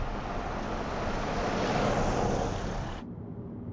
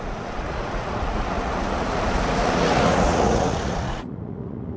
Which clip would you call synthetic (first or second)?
second